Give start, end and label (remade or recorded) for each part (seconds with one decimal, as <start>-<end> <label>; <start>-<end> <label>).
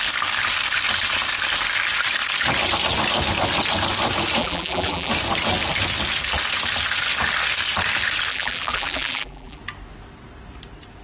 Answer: 0.0-4.4 recorded; 4.4-5.1 remade; 5.1-8.3 recorded; 8.3-9.6 remade; 9.6-11.0 recorded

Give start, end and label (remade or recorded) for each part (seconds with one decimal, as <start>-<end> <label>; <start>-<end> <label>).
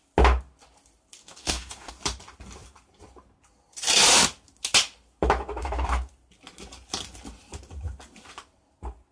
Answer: 0.0-1.2 recorded; 1.2-1.9 remade; 1.9-5.6 recorded; 5.6-6.1 remade; 6.1-9.1 recorded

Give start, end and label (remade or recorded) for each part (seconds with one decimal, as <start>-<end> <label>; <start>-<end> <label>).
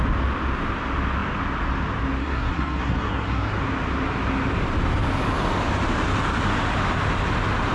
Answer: 0.0-2.2 recorded; 2.2-3.6 remade; 3.6-7.7 recorded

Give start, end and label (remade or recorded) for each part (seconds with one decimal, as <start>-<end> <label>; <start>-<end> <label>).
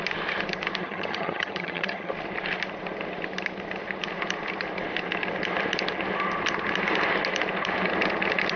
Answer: 0.0-0.8 recorded; 0.8-2.1 remade; 2.1-8.6 recorded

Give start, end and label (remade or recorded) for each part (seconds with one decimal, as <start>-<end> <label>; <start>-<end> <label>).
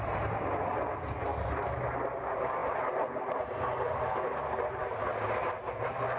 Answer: 0.0-6.2 recorded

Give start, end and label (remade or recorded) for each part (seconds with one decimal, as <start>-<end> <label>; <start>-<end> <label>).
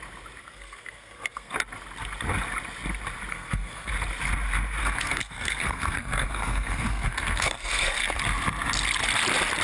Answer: 0.0-0.4 recorded; 0.4-1.5 remade; 1.5-3.3 recorded; 3.3-3.9 remade; 3.9-4.8 recorded; 4.8-8.2 remade; 8.2-9.6 recorded